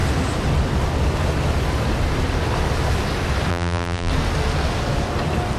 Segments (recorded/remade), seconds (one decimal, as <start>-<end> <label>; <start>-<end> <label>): 0.0-3.5 recorded; 3.5-4.1 remade; 4.1-5.6 recorded